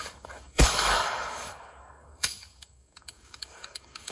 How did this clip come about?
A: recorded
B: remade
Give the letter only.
B